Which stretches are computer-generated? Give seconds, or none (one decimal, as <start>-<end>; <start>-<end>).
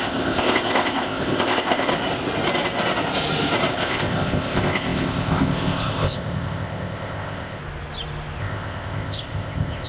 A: 0.0-1.9; 3.7-7.6; 8.4-9.9